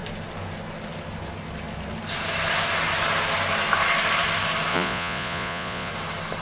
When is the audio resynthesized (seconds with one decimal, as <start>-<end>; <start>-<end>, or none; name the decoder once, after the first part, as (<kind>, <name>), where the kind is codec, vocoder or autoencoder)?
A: 4.7-5.9 (vocoder, Vocos)